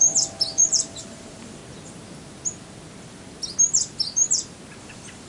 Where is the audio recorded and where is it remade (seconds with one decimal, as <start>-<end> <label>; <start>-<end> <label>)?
0.0-1.6 remade; 1.6-4.8 recorded; 4.8-5.3 remade